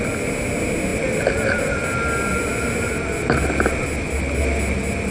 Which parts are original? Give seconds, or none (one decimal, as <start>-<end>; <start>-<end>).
0.0-5.1